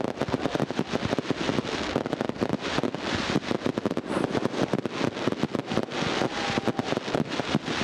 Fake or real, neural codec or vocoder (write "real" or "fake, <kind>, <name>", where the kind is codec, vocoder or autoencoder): real